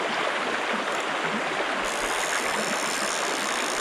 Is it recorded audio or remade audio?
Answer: recorded